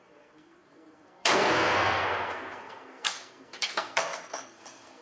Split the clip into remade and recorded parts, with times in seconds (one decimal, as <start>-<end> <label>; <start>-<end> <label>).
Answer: 0.0-5.0 remade